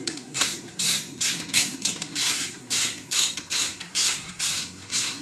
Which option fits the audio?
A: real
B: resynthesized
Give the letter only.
B